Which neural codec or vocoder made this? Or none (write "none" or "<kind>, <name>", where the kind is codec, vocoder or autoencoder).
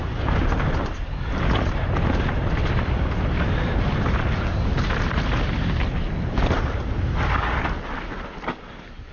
none